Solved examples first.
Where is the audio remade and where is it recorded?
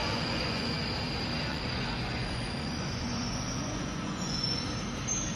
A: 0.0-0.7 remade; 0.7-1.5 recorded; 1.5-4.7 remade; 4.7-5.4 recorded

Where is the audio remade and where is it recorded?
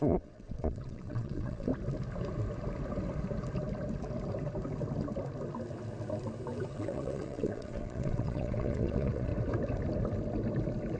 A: 0.0-1.7 remade; 1.7-6.7 recorded; 6.7-9.3 remade; 9.3-11.0 recorded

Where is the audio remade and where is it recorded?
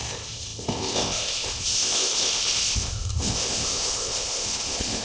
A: 0.0-5.0 remade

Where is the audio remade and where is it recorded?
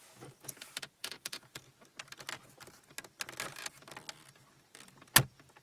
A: 0.0-1.0 recorded; 1.0-1.6 remade; 1.6-5.6 recorded